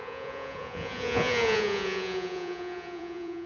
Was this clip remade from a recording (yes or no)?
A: yes